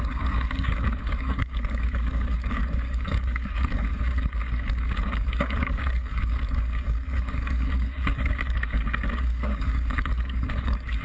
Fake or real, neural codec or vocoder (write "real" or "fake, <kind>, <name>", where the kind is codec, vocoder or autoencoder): fake, codec, DAC